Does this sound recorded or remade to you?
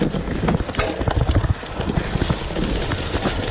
remade